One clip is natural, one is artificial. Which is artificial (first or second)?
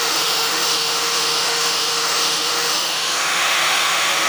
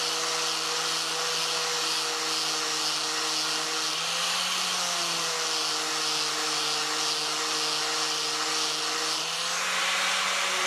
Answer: first